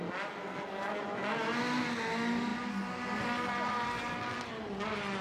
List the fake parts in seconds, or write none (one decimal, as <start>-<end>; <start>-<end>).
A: 0.4-1.0